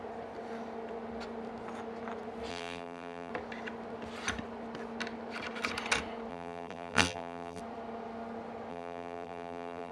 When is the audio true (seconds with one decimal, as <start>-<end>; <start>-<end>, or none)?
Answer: 0.0-2.5; 3.3-6.3; 7.6-8.7